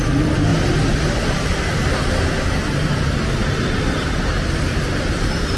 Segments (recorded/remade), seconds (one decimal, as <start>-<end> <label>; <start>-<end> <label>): 0.0-5.6 recorded